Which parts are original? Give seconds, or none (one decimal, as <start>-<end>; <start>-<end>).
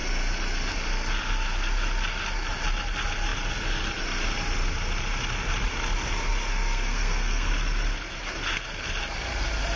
0.0-6.5; 7.5-9.8